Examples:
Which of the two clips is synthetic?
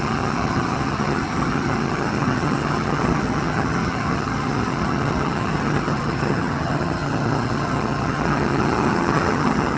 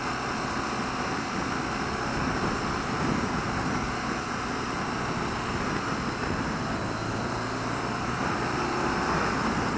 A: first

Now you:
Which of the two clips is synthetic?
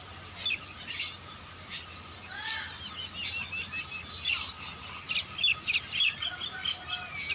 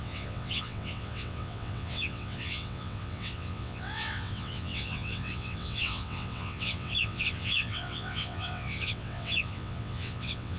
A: second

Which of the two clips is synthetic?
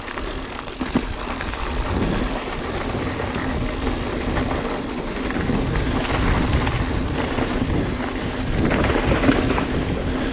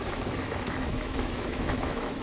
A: second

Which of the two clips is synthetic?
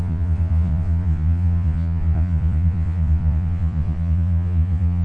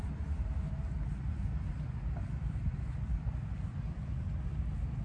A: first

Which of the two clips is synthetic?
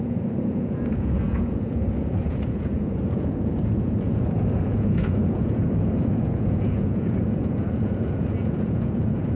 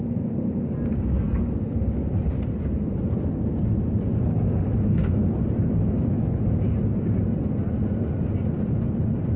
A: first